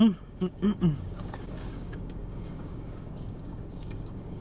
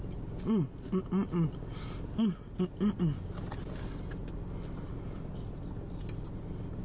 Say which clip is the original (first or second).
second